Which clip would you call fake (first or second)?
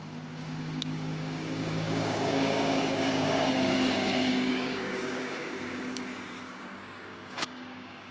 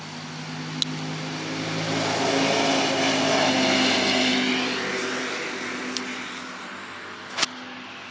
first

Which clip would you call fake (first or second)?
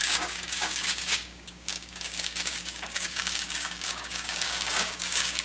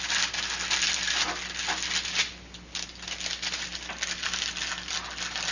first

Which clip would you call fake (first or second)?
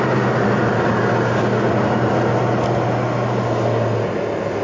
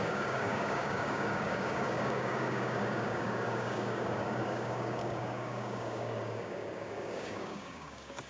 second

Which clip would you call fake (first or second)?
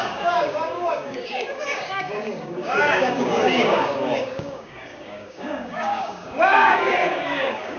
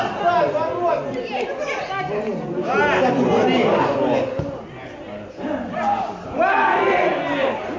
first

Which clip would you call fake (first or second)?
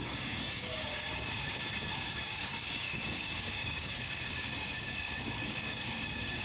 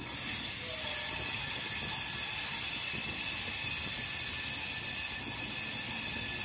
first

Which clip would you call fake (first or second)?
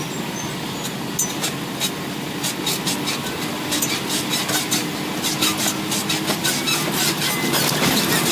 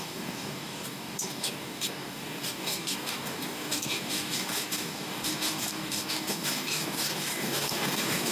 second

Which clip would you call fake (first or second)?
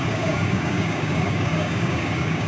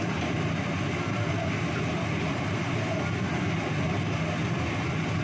first